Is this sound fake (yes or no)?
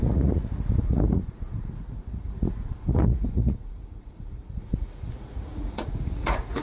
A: yes